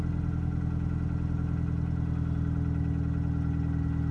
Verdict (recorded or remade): recorded